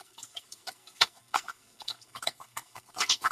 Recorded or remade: remade